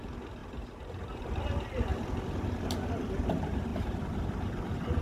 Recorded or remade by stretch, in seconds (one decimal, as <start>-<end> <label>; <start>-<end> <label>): 0.0-0.4 recorded; 0.4-1.4 remade; 1.4-3.7 recorded; 3.7-4.5 remade; 4.5-5.0 recorded